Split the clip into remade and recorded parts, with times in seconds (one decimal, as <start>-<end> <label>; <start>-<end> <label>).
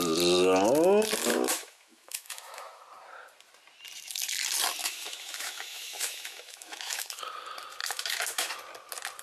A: 0.0-1.3 recorded; 1.3-2.8 remade; 2.8-4.8 recorded; 4.8-7.2 remade; 7.2-7.8 recorded; 7.8-8.5 remade; 8.5-9.2 recorded